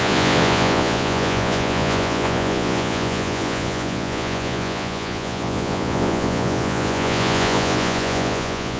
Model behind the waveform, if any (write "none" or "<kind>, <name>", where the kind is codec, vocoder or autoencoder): vocoder, Vocos